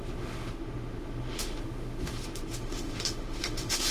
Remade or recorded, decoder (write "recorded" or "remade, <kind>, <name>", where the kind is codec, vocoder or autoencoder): remade, autoencoder, DAC-VAE